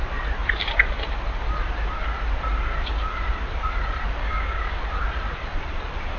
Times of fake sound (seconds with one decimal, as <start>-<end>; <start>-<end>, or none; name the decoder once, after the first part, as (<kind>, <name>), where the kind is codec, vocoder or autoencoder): 4.2-4.8 (codec, DAC)